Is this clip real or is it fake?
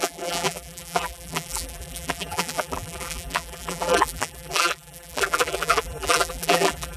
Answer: fake